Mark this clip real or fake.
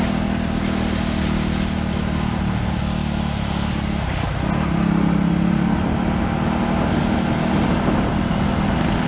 real